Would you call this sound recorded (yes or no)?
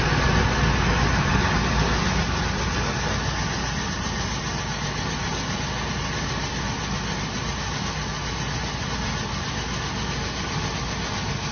yes